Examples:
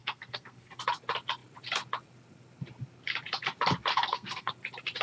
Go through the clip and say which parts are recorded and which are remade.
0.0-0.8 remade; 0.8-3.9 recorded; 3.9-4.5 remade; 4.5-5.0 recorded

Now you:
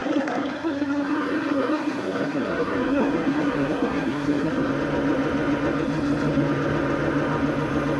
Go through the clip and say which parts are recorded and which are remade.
0.0-4.7 remade; 4.7-8.0 recorded

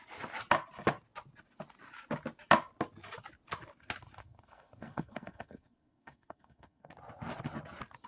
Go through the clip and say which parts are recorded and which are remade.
0.0-4.2 recorded; 4.2-6.9 remade; 6.9-8.1 recorded